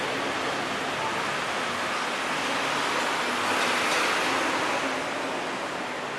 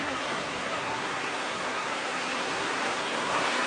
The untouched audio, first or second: first